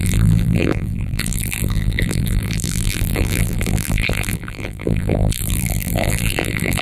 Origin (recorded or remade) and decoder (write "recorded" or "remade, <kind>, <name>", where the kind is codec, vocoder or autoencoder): remade, vocoder, BigVGAN v2